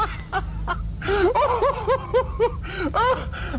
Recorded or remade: recorded